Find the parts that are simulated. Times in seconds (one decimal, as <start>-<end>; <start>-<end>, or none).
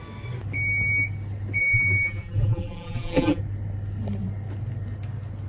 1.6-3.4